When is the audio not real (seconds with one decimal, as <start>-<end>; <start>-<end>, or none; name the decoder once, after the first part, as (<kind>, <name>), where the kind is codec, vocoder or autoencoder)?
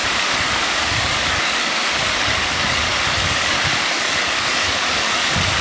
0.0-5.6 (codec, DAC)